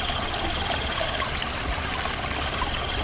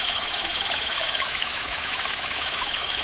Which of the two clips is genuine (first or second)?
first